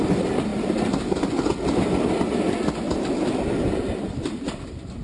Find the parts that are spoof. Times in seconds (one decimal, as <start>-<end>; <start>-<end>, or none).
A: none